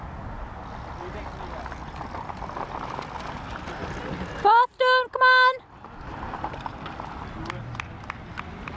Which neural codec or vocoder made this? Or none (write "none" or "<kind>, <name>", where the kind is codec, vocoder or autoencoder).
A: none